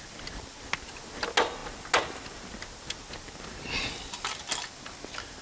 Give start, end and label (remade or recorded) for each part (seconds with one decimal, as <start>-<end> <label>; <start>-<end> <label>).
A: 0.0-5.4 recorded